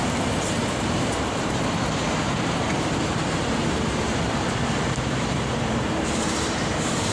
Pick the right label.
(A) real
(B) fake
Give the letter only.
B